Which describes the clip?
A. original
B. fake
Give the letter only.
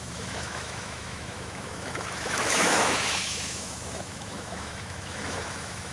B